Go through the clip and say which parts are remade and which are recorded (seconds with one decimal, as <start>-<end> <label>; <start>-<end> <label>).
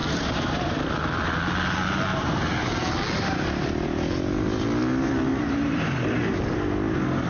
0.0-0.9 remade; 0.9-2.1 recorded; 2.1-2.9 remade; 2.9-5.3 recorded; 5.3-5.9 remade; 5.9-7.3 recorded